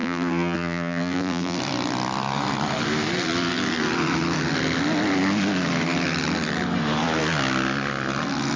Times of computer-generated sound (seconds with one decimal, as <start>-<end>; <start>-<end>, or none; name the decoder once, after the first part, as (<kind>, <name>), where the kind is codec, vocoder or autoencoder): 0.0-1.6 (vocoder, BigVGAN v2)